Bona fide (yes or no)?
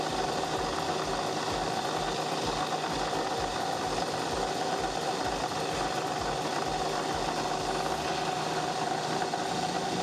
yes